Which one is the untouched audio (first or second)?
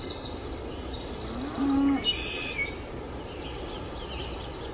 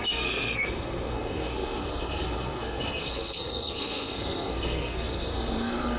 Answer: first